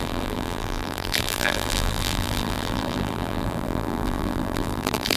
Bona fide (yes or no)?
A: no